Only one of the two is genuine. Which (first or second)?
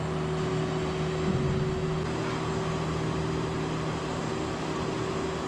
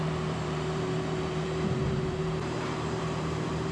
first